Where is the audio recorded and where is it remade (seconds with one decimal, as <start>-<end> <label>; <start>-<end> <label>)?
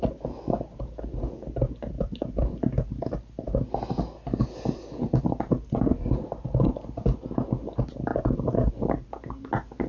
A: 0.0-9.9 recorded